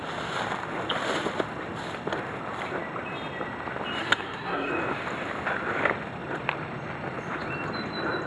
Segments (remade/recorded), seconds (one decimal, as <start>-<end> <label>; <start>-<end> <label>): 0.0-4.0 recorded; 4.0-4.7 remade; 4.7-8.3 recorded

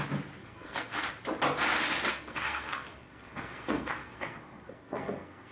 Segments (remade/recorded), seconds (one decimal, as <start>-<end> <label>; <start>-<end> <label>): 0.0-0.4 recorded; 0.4-1.1 remade; 1.1-2.1 recorded; 2.1-5.5 remade